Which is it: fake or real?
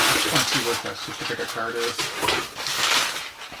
real